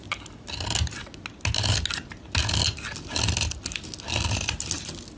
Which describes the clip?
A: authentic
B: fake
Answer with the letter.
A